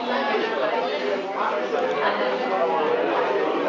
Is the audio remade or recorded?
recorded